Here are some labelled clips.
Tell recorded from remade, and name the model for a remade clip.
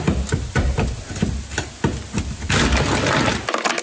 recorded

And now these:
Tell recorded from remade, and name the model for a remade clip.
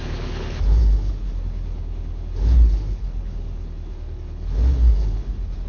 remade, codec, HILCodec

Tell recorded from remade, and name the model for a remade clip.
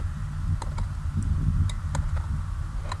recorded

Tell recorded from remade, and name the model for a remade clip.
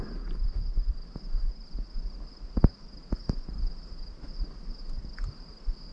recorded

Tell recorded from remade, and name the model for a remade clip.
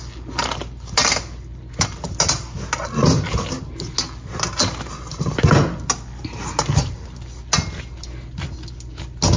recorded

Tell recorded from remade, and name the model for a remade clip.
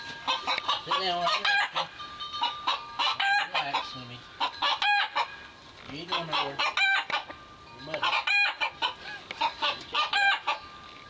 recorded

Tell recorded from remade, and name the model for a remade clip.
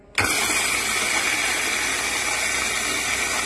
recorded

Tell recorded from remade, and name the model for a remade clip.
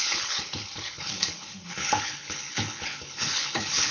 remade, codec, HILCodec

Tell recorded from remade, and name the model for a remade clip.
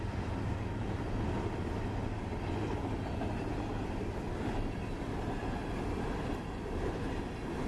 recorded